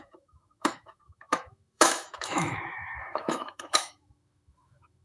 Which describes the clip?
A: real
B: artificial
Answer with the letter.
B